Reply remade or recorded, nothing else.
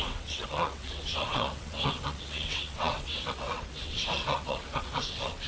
remade